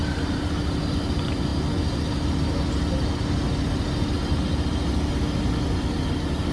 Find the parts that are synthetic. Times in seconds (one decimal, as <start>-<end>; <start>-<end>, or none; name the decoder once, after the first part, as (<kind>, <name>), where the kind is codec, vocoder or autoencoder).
none